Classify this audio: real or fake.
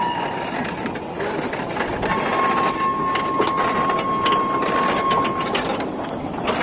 real